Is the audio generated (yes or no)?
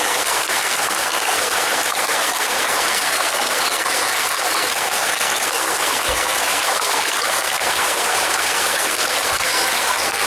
yes